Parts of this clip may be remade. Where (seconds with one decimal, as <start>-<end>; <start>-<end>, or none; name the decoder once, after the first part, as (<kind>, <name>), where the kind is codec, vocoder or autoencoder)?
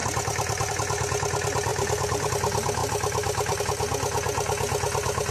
1.7-2.3 (vocoder, BigVGAN v2); 2.8-3.6